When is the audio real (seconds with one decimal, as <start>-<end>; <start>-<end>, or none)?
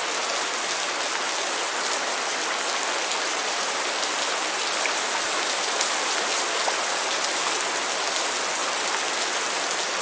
0.0-10.0